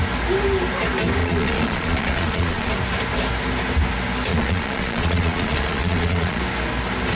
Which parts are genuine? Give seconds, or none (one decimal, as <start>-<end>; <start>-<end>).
0.0-1.2; 2.7-4.3; 6.4-7.2